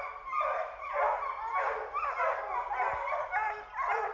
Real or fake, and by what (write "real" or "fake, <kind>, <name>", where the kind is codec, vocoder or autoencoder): real